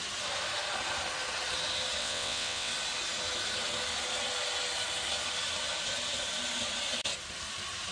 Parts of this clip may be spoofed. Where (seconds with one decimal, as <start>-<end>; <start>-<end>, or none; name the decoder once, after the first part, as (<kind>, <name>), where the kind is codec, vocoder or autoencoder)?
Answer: 2.0-2.7 (vocoder, WaveNeXt)